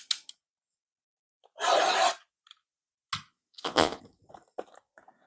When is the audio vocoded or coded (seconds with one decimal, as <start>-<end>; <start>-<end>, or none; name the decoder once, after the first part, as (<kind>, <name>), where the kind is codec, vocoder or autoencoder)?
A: 3.5-4.0 (vocoder, Vocos)